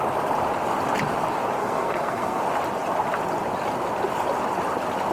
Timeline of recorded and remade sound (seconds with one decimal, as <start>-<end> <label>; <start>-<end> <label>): 0.0-1.6 recorded; 1.6-2.4 remade; 2.4-5.1 recorded